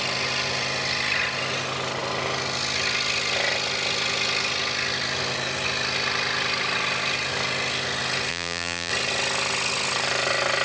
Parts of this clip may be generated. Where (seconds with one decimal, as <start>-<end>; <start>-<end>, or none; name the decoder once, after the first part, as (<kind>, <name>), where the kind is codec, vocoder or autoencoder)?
8.3-8.9 (vocoder, BigVGAN v2)